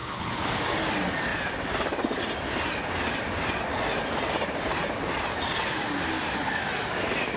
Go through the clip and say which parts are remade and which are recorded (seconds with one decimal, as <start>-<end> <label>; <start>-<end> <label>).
0.0-0.6 remade; 0.6-7.4 recorded